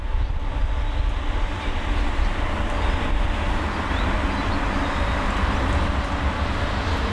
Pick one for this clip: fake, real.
real